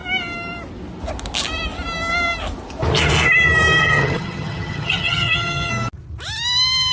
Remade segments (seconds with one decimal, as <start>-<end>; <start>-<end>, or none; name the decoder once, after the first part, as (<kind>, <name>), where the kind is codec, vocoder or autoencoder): 3.8-5.7 (vocoder, HiFi-GAN)